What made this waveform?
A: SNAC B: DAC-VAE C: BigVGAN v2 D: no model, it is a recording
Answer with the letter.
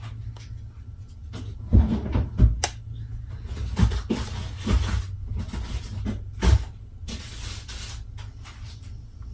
D